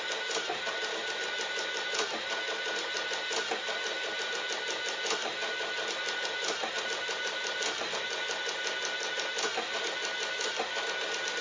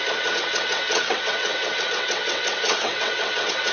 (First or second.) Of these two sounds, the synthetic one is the second